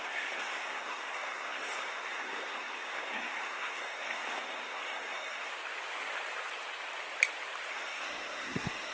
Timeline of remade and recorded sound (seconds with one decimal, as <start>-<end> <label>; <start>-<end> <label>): 0.0-5.5 remade; 5.5-7.7 recorded; 7.7-8.9 remade